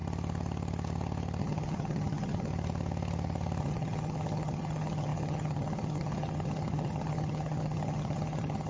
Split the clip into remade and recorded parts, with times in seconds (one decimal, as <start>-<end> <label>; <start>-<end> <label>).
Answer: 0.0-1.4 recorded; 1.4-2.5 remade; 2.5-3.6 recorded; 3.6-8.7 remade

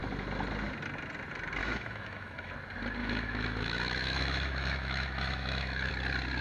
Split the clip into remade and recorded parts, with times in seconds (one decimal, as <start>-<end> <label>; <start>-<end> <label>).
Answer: 0.0-1.6 recorded; 1.6-2.5 remade; 2.5-3.0 recorded; 3.0-5.9 remade; 5.9-6.4 recorded

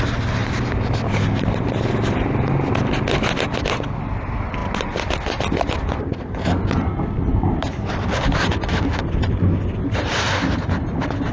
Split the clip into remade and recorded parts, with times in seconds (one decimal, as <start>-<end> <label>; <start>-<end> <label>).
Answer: 0.0-0.4 recorded; 0.4-2.5 remade; 2.5-7.7 recorded; 7.7-11.3 remade